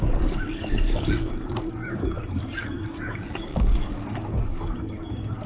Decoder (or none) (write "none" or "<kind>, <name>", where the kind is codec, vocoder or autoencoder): codec, DAC